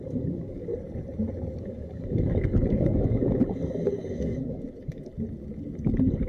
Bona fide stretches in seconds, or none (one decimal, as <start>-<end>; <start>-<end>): 0.7-1.6; 3.4-3.9; 5.1-6.3